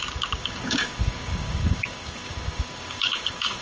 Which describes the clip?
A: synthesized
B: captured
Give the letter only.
A